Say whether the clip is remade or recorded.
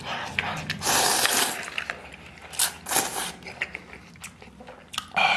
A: recorded